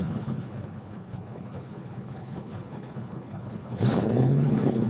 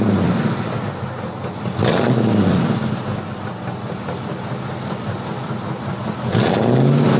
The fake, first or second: first